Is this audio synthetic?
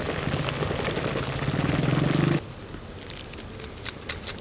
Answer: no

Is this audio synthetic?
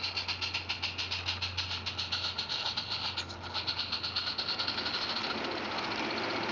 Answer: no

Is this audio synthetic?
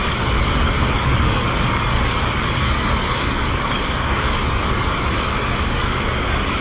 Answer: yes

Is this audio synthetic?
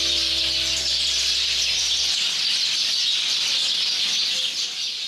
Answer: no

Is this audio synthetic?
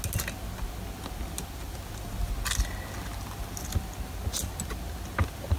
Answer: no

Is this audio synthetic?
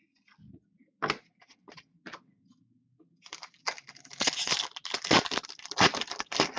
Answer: no